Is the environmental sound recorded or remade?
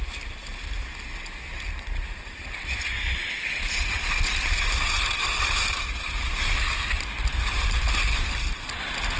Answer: recorded